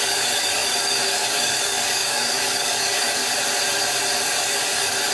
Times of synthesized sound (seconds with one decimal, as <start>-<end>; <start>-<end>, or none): 0.0-3.2; 4.4-5.1